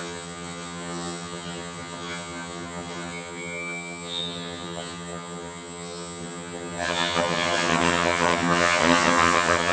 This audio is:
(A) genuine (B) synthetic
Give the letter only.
B